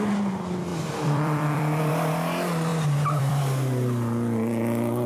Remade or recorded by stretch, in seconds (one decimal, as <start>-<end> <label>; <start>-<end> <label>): 0.0-0.7 recorded; 0.7-1.9 remade; 1.9-2.7 recorded; 2.7-3.4 remade; 3.4-5.1 recorded